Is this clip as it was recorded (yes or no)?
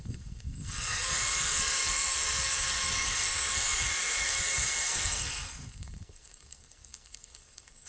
no